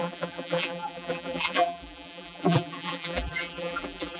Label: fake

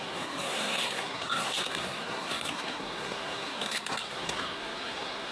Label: fake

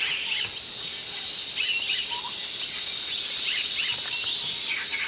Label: real